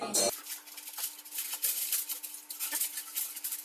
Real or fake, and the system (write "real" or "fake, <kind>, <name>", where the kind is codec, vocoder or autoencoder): real